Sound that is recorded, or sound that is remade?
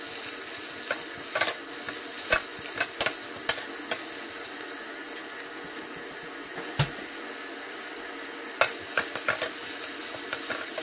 recorded